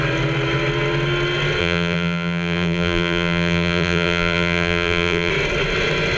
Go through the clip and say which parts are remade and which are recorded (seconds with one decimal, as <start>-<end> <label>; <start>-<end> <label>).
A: 0.0-1.6 recorded; 1.6-5.3 remade; 5.3-6.2 recorded